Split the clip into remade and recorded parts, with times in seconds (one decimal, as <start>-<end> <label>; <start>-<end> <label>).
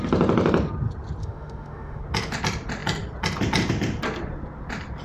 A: 0.0-1.2 recorded; 1.2-2.0 remade; 2.0-5.0 recorded